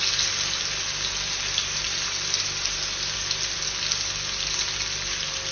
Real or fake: real